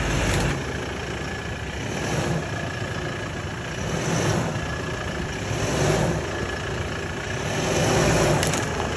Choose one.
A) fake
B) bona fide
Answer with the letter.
B